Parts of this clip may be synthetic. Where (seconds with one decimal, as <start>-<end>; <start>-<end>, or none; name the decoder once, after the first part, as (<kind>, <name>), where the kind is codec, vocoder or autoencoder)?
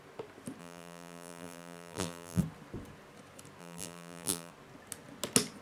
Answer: 0.6-2.4 (vocoder, BigVGAN v2); 3.6-4.5